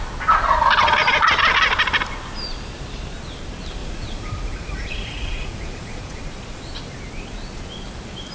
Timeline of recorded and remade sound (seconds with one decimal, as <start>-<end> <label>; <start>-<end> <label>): 0.0-3.8 recorded; 3.8-6.2 remade; 6.2-8.3 recorded